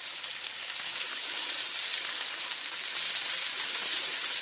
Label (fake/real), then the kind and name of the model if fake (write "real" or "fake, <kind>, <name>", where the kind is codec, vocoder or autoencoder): real